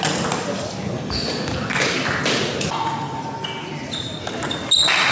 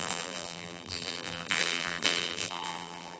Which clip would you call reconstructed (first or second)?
second